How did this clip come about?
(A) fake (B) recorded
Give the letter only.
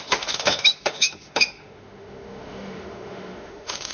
A